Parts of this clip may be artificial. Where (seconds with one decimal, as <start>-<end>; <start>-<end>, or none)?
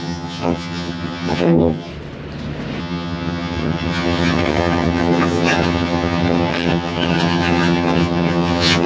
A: 0.0-1.9; 2.8-8.9